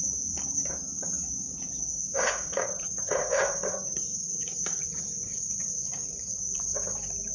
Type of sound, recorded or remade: remade